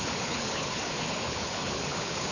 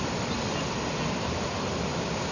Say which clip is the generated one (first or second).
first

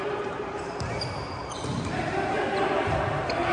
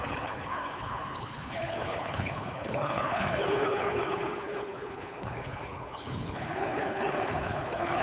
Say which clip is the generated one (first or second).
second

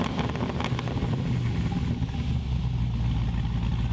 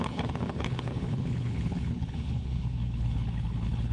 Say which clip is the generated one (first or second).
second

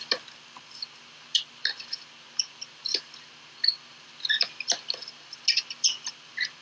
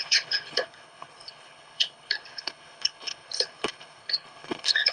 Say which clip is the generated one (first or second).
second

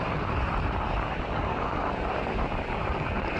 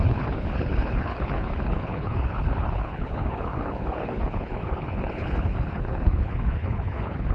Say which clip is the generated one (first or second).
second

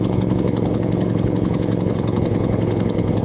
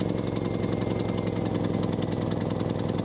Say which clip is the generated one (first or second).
first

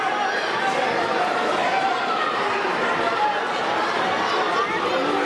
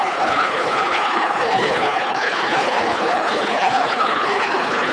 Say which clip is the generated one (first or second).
second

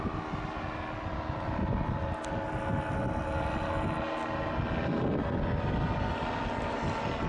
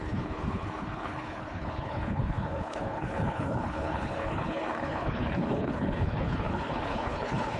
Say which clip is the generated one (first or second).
second